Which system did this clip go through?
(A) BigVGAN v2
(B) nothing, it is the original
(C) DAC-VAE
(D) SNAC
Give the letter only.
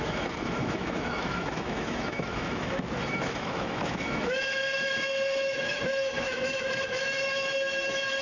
C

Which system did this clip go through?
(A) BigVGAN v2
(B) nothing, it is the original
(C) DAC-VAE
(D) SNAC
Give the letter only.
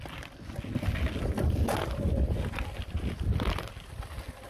B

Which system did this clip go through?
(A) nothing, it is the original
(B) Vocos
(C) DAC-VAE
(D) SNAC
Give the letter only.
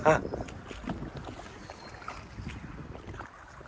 A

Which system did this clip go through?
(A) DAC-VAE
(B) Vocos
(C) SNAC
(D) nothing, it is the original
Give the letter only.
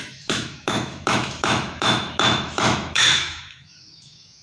A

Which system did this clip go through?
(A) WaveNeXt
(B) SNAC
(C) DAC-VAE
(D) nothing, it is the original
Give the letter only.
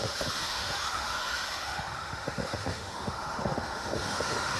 C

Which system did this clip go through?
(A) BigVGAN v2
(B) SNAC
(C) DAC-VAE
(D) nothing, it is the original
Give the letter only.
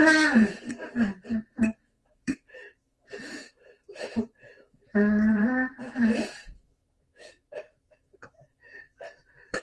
C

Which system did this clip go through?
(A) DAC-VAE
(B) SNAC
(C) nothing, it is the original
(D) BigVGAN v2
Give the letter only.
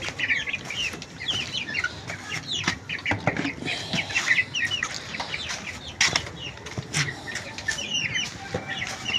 C